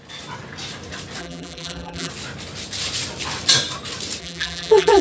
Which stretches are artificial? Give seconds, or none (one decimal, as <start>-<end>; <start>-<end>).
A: 1.2-2.1; 4.2-5.0

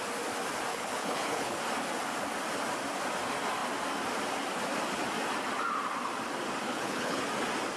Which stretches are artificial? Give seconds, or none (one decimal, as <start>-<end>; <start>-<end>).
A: 0.7-1.6; 6.7-7.2

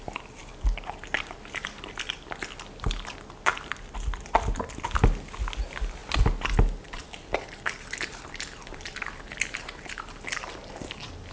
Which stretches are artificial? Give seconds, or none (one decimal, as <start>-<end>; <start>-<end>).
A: none

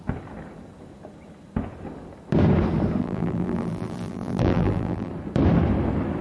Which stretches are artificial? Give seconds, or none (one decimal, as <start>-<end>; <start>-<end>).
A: 3.0-5.1

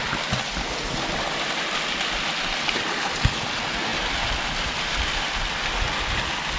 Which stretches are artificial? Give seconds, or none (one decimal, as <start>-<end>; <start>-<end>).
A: none

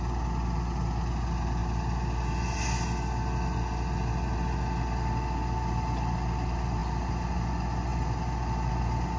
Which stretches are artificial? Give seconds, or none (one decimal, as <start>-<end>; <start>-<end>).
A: none